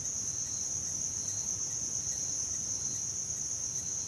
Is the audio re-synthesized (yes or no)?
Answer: no